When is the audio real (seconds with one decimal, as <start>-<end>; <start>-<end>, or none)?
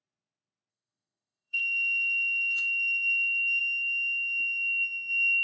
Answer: 0.0-0.7; 3.6-5.4